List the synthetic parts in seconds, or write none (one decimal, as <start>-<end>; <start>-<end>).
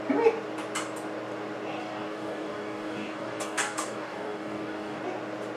1.8-5.0